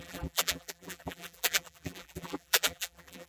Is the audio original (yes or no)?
no